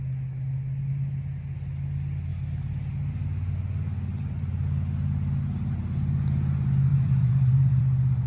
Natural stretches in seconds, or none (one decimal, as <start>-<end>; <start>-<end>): 0.0-6.9; 7.8-8.3